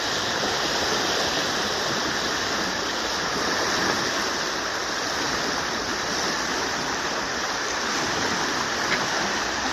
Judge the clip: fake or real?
real